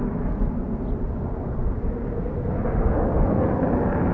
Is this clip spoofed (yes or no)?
no